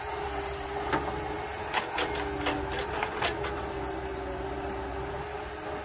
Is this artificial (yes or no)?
no